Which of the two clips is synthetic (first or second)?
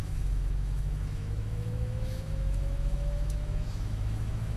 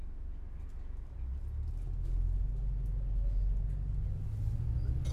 first